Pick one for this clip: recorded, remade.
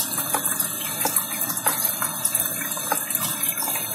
recorded